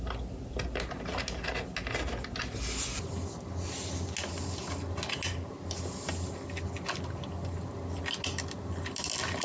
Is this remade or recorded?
recorded